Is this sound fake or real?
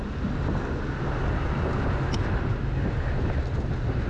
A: real